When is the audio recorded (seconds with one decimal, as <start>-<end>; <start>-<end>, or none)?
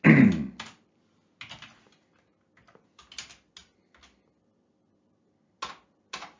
0.0-6.4